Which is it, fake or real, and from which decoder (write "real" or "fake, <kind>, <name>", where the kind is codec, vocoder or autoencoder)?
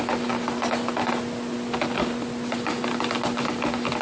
real